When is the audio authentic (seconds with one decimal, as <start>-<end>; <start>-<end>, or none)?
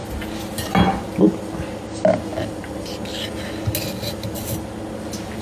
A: 0.0-2.3; 2.9-5.4